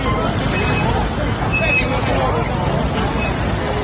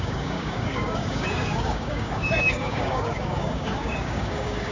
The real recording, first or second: first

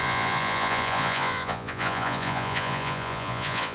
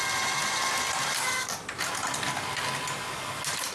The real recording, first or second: second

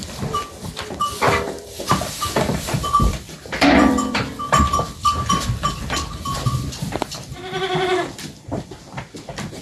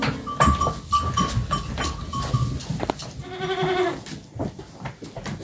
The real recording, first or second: second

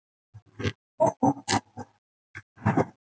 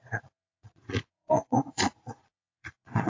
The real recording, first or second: first